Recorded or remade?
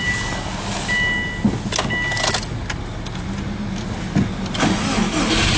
recorded